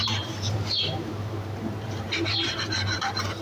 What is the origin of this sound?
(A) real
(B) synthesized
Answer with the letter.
B